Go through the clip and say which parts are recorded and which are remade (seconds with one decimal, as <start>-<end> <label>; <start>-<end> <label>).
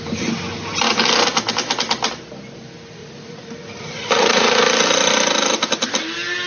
0.0-3.0 recorded; 3.0-4.6 remade; 4.6-6.5 recorded